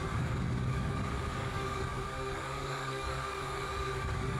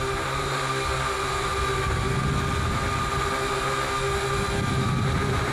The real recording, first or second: second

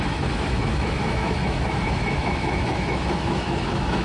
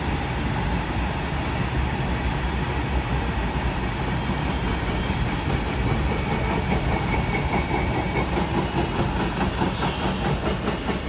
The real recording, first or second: second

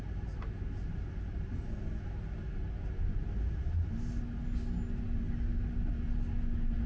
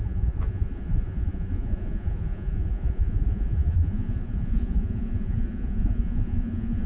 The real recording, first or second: first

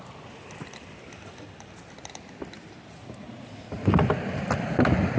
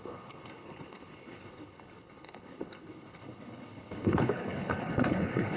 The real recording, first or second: first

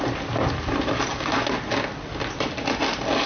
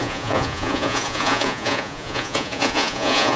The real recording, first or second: first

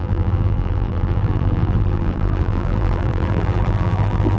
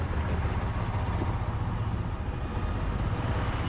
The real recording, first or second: second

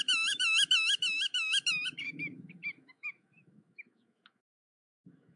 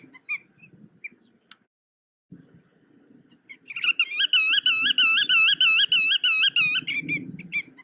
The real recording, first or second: second